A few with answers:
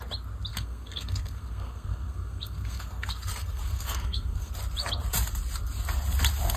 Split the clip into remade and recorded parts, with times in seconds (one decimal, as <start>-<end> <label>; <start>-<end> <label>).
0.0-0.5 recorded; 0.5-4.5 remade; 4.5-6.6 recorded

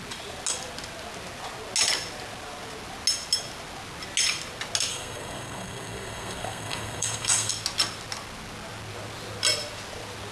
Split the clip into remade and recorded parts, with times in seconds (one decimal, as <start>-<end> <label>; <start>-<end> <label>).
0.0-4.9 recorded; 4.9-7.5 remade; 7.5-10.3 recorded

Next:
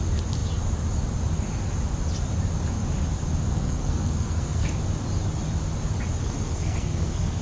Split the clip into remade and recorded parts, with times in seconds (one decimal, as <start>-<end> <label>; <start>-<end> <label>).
0.0-3.5 recorded; 3.5-4.8 remade; 4.8-6.2 recorded; 6.2-7.4 remade

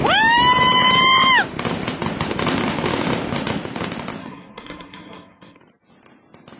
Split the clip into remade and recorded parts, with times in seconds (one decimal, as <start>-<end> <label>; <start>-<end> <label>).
0.0-4.2 recorded; 4.2-5.6 remade; 5.6-6.6 recorded